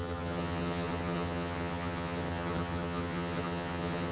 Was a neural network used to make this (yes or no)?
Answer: yes